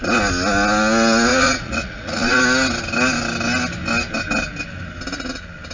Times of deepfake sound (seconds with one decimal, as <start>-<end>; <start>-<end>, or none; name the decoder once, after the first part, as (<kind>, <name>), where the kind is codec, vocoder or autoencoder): 1.3-2.4 (vocoder, Vocos)